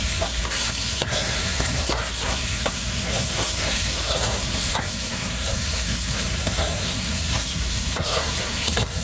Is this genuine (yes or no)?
no